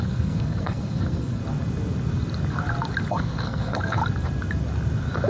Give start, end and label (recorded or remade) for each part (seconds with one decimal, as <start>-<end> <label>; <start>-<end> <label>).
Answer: 0.0-1.4 remade; 1.4-3.1 recorded; 3.1-4.0 remade; 4.0-5.3 recorded